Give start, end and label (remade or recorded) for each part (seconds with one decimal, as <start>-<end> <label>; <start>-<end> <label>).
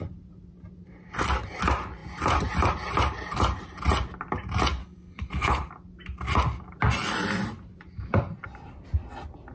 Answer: 0.0-4.8 recorded; 4.8-5.7 remade; 5.7-9.5 recorded